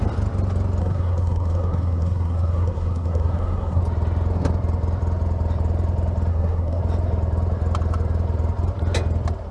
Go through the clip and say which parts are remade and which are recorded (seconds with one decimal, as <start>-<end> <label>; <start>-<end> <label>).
0.0-0.8 recorded; 0.8-3.8 remade; 3.8-6.3 recorded; 6.3-6.8 remade; 6.8-9.5 recorded